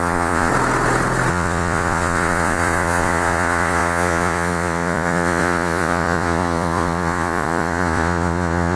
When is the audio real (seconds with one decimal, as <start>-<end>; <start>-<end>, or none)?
0.5-1.3